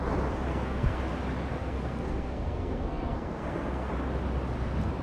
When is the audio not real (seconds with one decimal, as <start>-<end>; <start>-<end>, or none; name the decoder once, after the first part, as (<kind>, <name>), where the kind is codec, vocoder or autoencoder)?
0.5-1.0 (codec, SNAC); 1.5-3.9